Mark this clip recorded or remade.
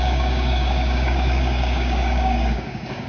remade